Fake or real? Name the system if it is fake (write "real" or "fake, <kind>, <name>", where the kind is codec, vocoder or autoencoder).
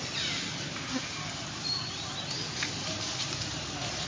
real